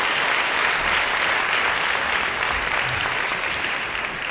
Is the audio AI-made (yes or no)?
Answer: no